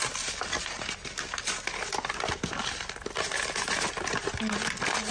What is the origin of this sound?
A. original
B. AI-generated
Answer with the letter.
A